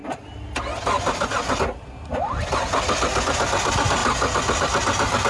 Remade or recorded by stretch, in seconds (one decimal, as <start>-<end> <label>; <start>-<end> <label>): 0.0-5.3 recorded